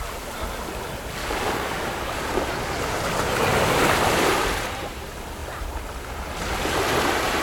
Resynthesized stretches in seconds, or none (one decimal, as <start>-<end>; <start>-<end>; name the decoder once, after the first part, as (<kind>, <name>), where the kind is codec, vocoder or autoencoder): 1.2-2.3 (codec, DAC)